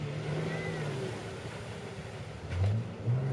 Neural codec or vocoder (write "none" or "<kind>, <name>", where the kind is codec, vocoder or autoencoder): none